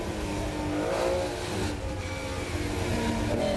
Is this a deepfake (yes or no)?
no